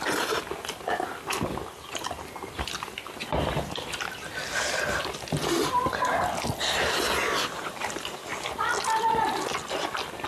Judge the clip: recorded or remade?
recorded